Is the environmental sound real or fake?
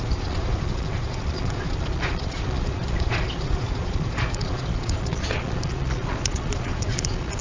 fake